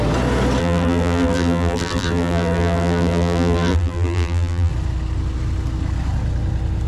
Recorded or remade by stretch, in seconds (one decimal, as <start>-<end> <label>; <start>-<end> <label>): 0.0-0.6 recorded; 0.6-4.7 remade; 4.7-6.9 recorded